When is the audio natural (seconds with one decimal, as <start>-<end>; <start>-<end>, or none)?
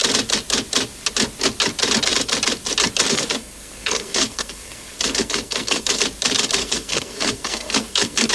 0.0-3.1; 6.0-6.6